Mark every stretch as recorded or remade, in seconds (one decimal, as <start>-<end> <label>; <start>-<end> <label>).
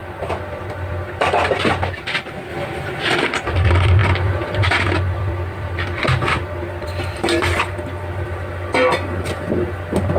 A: 0.0-0.6 remade; 0.6-4.0 recorded; 4.0-7.7 remade; 7.7-10.2 recorded